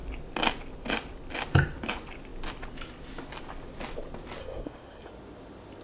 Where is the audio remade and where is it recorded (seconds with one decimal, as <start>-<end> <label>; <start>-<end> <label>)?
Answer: 0.0-4.4 recorded; 4.4-5.1 remade; 5.1-5.8 recorded